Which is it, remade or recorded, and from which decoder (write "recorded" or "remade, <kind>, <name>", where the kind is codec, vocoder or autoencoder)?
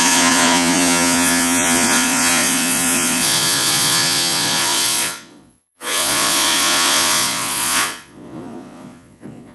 remade, vocoder, Vocos